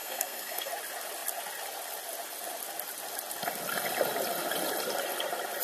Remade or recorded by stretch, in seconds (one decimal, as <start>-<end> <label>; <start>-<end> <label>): 0.0-0.7 remade; 0.7-5.6 recorded